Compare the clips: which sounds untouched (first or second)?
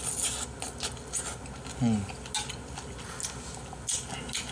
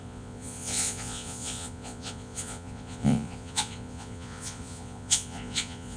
first